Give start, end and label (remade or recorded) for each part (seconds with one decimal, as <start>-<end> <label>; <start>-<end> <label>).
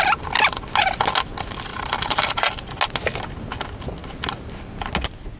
0.0-1.7 recorded; 1.7-2.4 remade; 2.4-4.0 recorded; 4.0-4.5 remade; 4.5-5.4 recorded